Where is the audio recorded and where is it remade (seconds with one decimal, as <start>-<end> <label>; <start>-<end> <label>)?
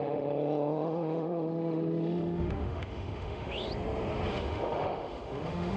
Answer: 0.0-3.7 remade; 3.7-4.3 recorded; 4.3-5.8 remade